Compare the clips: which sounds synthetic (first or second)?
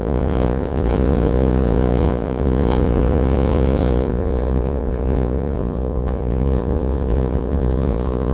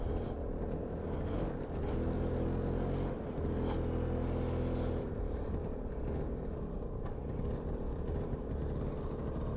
first